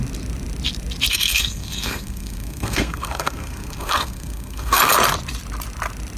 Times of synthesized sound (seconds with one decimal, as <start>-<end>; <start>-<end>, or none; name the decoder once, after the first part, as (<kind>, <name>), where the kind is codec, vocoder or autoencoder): 1.1-4.8 (codec, SNAC)